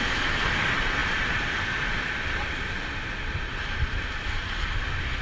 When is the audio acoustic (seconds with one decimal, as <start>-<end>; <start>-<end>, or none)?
0.0-5.2